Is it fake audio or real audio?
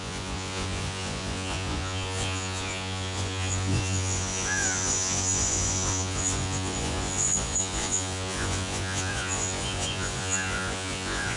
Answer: fake